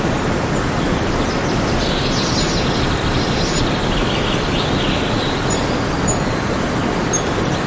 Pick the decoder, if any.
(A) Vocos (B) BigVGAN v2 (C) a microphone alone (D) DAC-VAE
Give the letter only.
C